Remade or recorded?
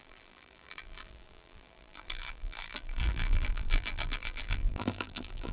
remade